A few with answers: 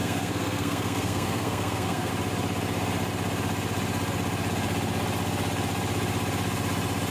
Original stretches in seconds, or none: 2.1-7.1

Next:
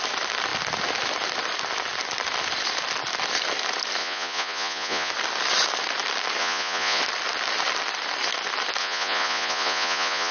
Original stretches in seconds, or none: 0.0-4.0; 5.1-6.4; 7.0-8.8

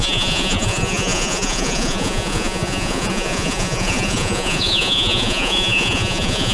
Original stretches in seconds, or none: none

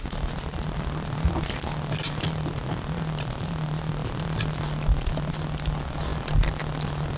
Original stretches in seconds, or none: 0.0-7.2

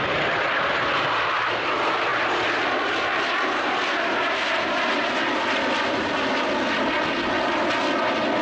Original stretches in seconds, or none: 0.0-8.4